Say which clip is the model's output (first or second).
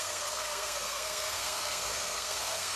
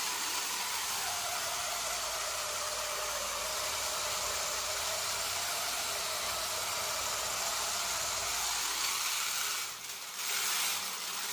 first